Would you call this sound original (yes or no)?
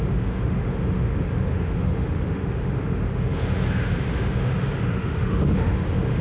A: no